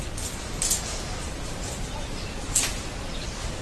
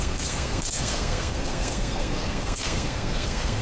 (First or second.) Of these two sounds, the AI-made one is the second